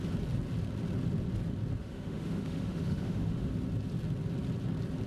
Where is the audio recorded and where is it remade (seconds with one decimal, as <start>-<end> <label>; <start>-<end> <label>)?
0.0-1.8 recorded; 1.8-3.5 remade; 3.5-5.1 recorded

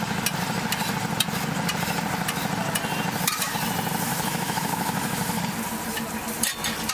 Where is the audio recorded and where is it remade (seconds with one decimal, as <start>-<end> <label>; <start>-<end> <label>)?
0.0-4.1 recorded; 4.1-5.4 remade; 5.4-6.9 recorded

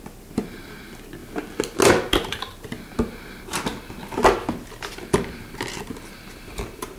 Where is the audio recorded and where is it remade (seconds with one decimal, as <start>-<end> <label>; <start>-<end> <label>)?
0.0-7.0 recorded

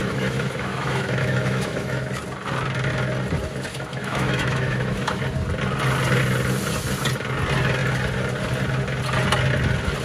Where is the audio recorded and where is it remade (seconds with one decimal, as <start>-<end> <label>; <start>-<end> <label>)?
0.0-2.1 remade; 2.1-3.7 recorded; 3.7-5.2 remade; 5.2-10.0 recorded

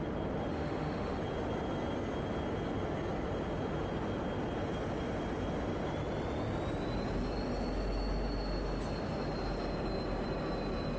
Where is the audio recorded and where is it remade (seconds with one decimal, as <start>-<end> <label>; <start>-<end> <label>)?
0.0-0.5 recorded; 0.5-1.2 remade; 1.2-11.0 recorded